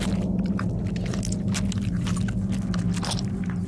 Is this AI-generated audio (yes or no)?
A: no